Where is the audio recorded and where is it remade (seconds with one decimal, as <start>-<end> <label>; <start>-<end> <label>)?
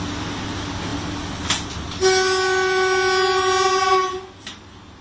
0.0-5.0 recorded